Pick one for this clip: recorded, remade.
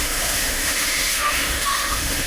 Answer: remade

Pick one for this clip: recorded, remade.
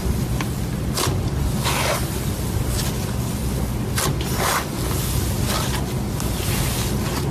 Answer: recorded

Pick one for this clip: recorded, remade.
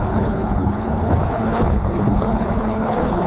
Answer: remade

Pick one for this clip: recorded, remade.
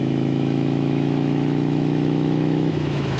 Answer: remade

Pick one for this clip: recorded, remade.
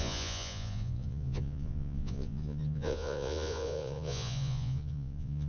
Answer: remade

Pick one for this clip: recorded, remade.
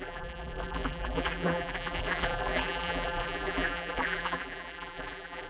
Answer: remade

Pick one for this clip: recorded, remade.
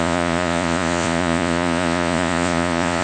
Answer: remade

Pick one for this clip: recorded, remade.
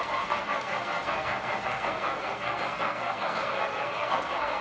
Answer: remade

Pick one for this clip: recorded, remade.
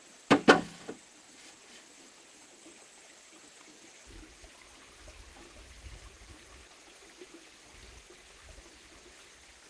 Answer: recorded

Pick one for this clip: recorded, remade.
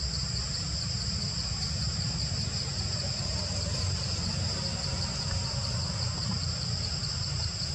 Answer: remade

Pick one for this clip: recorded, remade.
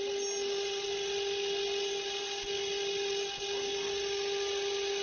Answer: recorded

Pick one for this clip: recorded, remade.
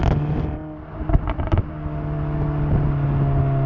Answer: recorded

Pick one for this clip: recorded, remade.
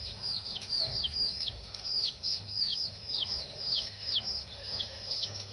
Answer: remade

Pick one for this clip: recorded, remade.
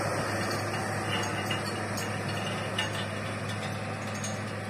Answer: recorded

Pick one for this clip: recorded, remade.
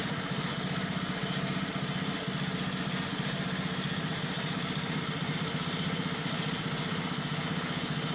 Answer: recorded